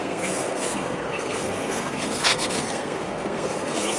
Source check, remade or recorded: remade